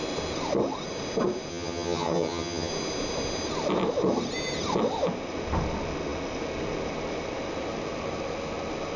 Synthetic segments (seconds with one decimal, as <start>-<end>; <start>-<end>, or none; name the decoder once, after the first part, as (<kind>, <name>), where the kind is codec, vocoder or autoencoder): 1.5-2.7 (vocoder, HiFi-GAN)